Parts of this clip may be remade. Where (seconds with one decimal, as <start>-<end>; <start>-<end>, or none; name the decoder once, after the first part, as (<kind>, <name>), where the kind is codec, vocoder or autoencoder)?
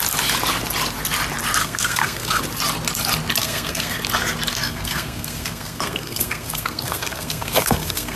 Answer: 1.6-2.4 (codec, SNAC); 3.4-4.0; 4.5-8.2